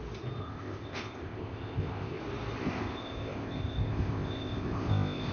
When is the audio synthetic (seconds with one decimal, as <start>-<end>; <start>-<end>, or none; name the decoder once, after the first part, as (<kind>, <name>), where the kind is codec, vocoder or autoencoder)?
0.4-2.2 (codec, ZipCodec); 2.6-5.3